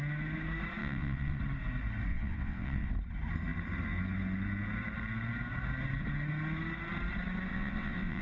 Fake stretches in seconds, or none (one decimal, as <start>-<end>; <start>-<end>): 0.8-1.4; 2.1-2.9; 7.5-8.2